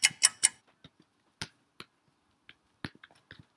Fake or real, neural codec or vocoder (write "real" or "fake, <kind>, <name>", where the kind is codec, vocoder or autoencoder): real